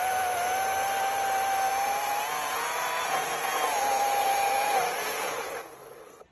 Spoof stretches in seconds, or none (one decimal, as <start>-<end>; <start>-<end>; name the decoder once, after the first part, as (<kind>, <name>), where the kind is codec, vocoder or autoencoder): 1.7-5.5 (vocoder, Vocos)